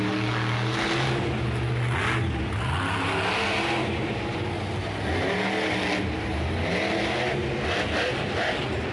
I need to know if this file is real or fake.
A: real